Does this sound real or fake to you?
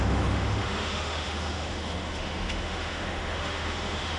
fake